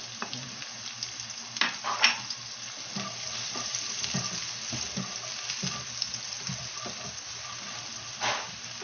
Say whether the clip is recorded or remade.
recorded